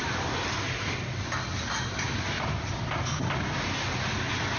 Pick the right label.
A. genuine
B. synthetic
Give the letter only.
A